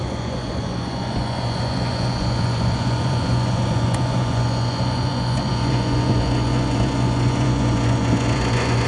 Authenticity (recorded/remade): remade